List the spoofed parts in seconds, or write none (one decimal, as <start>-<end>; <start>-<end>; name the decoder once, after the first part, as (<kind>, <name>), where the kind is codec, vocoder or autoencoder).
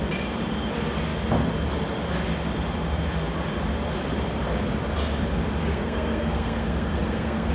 5.7-7.5 (codec, SNAC)